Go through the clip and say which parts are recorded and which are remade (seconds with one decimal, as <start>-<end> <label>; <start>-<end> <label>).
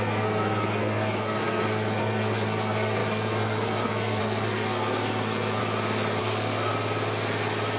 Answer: 0.0-5.6 remade; 5.6-6.2 recorded; 6.2-6.7 remade; 6.7-7.8 recorded